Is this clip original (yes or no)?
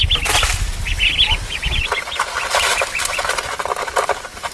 yes